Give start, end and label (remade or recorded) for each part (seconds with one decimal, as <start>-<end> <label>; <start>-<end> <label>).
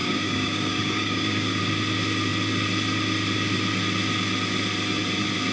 0.0-1.6 remade; 1.6-5.5 recorded